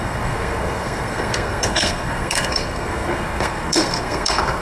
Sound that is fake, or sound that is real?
fake